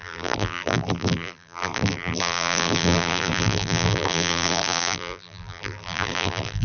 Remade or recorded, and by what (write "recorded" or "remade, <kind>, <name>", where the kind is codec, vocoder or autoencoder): remade, vocoder, BigVGAN v2